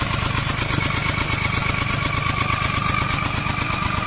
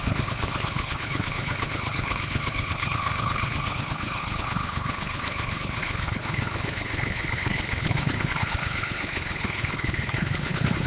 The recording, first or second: first